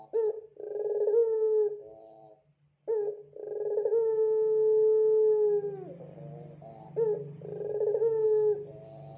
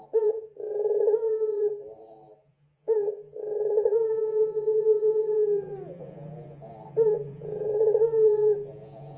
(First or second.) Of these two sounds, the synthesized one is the second